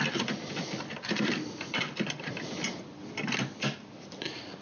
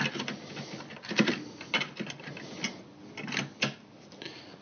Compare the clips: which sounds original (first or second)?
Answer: second